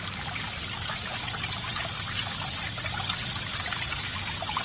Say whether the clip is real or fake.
real